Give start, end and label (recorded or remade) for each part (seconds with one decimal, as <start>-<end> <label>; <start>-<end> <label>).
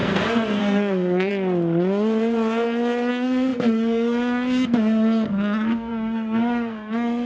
0.0-1.3 remade; 1.3-3.1 recorded; 3.1-7.3 remade